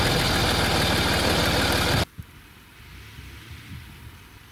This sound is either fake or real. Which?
real